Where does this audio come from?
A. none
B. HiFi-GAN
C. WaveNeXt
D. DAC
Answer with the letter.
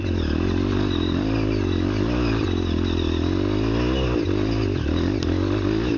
A